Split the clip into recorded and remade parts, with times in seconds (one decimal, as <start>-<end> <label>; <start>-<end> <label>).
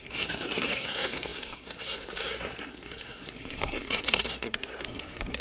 0.0-5.4 remade